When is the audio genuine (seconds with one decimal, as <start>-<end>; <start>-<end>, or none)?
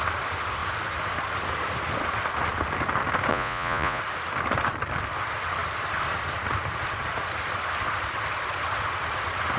0.0-3.3; 4.0-9.6